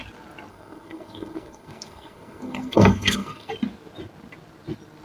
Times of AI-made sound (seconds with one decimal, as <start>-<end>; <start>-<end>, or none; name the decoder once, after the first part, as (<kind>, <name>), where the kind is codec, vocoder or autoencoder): 0.5-3.5 (codec, SNAC)